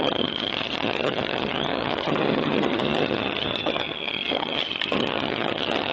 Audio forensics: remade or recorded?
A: remade